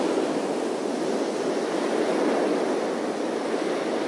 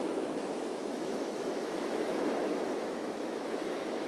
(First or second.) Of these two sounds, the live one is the first